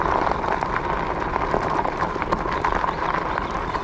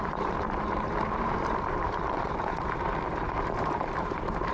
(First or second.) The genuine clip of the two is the first